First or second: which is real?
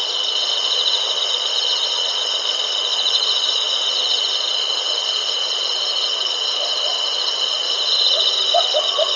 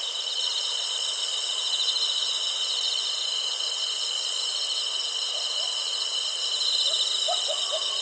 second